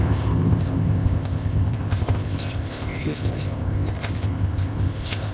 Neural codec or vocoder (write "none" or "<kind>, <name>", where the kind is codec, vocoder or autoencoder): codec, ZipCodec